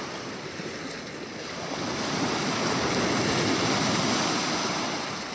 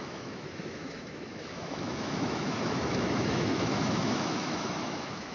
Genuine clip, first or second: first